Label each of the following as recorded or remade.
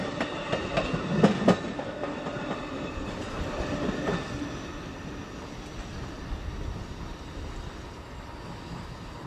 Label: recorded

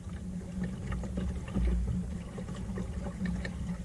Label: recorded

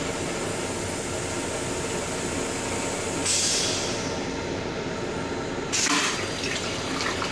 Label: recorded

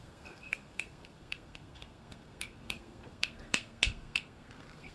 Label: remade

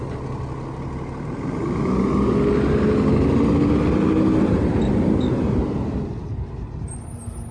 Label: recorded